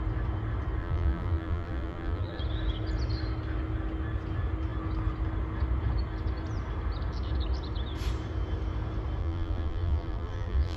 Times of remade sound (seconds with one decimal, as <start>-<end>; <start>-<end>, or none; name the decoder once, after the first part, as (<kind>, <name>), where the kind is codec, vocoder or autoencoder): 0.8-2.4 (vocoder, BigVGAN v2); 9.2-10.8